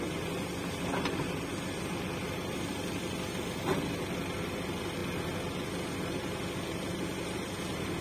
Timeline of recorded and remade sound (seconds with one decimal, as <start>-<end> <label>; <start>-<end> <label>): 0.0-8.0 recorded